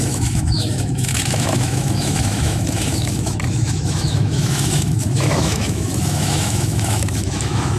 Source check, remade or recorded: remade